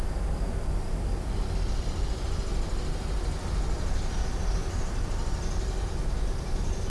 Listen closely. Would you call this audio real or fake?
real